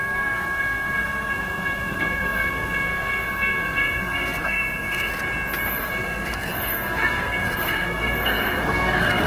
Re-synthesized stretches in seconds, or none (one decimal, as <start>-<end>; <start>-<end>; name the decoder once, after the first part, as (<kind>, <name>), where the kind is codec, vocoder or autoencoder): 0.0-5.1 (codec, SNAC); 5.7-9.3